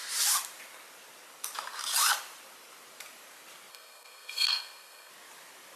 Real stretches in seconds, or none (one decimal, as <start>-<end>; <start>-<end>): 0.0-3.7; 5.1-5.8